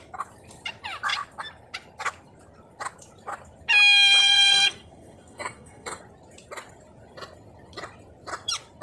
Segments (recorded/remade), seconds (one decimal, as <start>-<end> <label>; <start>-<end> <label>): 0.0-4.2 recorded; 4.2-6.0 remade; 6.0-8.8 recorded